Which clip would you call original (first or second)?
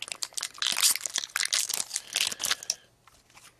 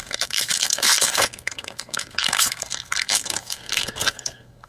first